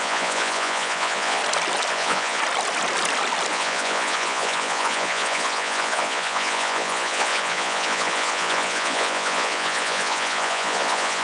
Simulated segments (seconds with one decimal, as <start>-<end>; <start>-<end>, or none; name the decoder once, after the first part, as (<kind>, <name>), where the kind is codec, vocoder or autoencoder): 0.0-1.4 (vocoder, Vocos); 1.9-2.4; 3.5-11.2